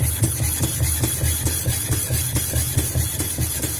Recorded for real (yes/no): yes